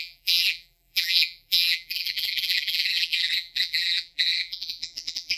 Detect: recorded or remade remade